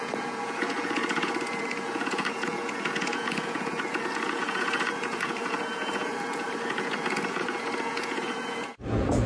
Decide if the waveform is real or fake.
fake